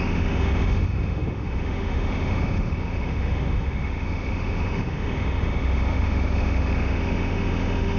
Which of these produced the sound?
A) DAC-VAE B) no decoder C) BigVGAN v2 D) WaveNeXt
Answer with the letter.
A